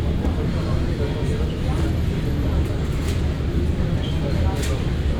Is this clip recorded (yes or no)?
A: yes